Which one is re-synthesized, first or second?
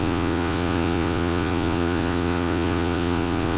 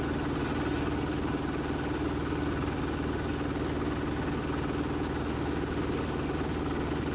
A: first